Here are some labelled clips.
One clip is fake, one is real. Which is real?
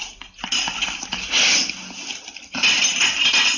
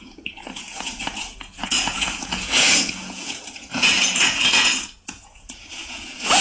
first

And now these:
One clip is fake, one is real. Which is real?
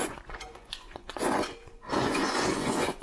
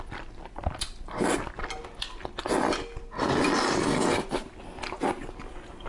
second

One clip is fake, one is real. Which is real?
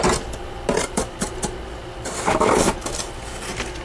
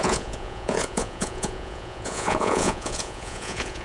first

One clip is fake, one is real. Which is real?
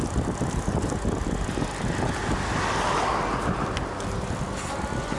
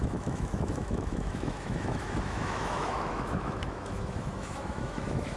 first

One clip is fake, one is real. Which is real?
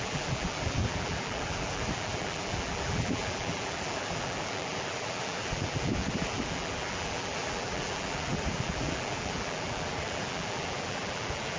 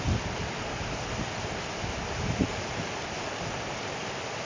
second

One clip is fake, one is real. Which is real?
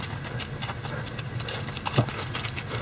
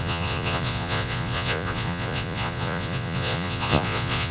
first